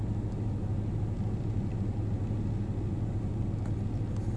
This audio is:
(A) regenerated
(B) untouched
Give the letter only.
B